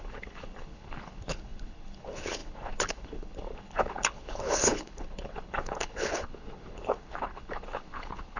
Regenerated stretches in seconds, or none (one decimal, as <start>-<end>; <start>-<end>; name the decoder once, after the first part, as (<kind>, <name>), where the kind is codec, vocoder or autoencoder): 0.0-8.4 (codec, HILCodec)